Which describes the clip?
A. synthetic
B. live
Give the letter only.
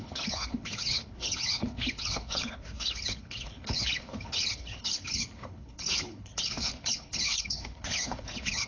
A